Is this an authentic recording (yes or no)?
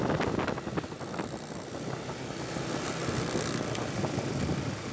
yes